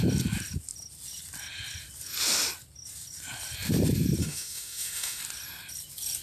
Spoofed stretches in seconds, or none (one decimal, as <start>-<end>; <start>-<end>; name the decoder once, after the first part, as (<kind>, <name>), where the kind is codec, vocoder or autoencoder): 4.2-5.2 (autoencoder, DAC-VAE)

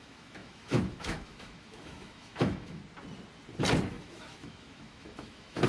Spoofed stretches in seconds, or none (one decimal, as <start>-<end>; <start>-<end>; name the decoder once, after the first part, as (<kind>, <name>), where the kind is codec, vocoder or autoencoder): 0.0-2.8 (autoencoder, DAC-VAE); 3.9-5.7

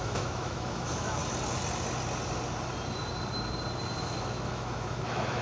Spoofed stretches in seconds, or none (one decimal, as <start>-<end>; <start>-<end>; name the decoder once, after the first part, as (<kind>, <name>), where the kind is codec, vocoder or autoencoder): 0.0-1.2 (autoencoder, DAC-VAE); 4.0-5.4

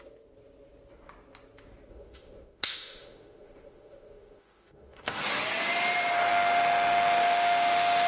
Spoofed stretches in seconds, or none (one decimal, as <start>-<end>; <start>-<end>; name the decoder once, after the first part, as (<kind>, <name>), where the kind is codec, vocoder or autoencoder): 1.9-5.2 (autoencoder, DAC-VAE); 6.3-8.1

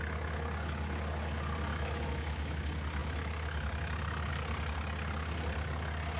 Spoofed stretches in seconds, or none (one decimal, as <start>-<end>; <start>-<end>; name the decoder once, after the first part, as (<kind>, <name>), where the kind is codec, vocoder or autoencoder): 1.7-2.6 (autoencoder, DAC-VAE)